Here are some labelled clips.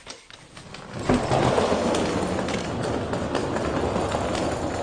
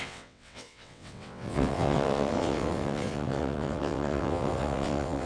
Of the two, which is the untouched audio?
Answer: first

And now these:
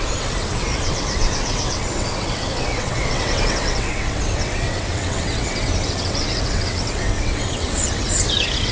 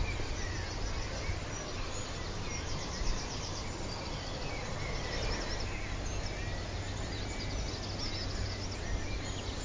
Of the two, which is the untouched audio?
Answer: second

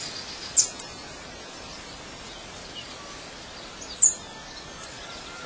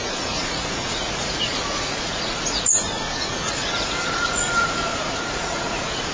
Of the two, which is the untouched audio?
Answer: first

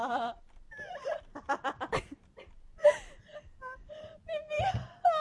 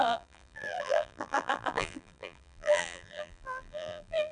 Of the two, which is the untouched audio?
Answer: first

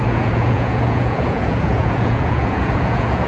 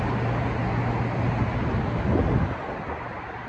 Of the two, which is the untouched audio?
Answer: second